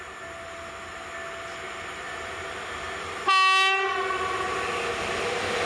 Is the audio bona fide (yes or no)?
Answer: yes